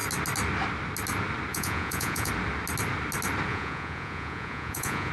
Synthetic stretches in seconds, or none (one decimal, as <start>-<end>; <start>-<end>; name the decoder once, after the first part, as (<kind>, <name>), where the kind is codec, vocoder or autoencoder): 1.5-2.3 (vocoder, Vocos); 3.5-5.1

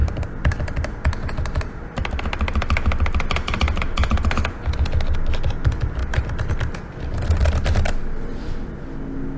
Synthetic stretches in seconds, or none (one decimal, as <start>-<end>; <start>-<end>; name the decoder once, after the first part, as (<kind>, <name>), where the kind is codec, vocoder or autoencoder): none